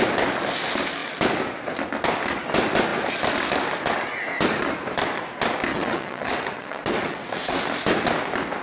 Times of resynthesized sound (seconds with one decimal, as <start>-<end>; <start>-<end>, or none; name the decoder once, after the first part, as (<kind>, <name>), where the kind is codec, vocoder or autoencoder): 5.7-7.6 (vocoder, WaveNeXt)